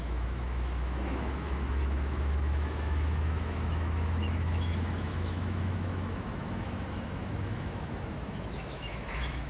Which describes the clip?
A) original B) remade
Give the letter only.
B